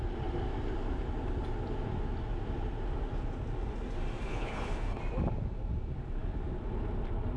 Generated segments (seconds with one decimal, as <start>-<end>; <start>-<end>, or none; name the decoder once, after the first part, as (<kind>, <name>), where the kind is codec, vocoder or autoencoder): 4.3-5.0 (codec, HILCodec)